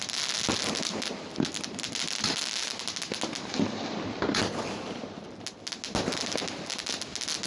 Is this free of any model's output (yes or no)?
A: yes